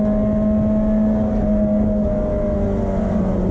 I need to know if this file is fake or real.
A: real